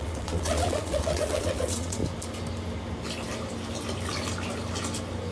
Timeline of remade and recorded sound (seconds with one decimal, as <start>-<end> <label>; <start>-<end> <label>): 0.0-2.0 remade; 2.0-5.3 recorded